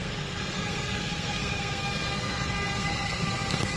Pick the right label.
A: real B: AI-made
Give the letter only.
B